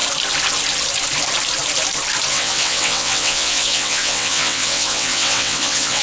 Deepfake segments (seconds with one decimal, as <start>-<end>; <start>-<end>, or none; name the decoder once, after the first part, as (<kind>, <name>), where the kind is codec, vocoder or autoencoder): 2.3-6.0 (vocoder, WaveNeXt)